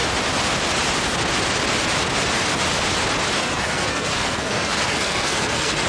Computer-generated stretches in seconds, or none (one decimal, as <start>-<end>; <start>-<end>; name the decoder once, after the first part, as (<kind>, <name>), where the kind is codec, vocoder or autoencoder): 3.4-5.9 (codec, SNAC)